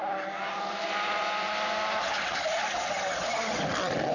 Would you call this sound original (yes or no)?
yes